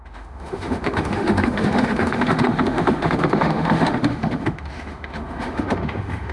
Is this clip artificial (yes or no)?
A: yes